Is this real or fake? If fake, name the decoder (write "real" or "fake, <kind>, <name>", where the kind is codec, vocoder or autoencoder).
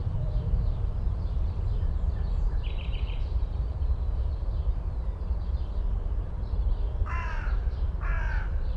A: fake, vocoder, BigVGAN v2